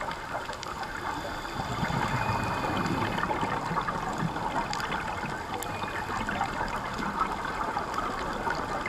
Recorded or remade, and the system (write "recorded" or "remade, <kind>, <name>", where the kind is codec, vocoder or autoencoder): recorded